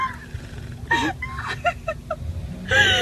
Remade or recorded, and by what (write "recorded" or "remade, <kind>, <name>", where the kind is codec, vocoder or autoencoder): recorded